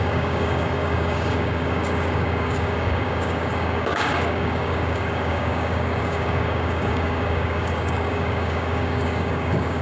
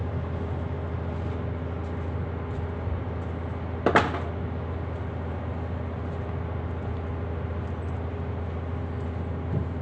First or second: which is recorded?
second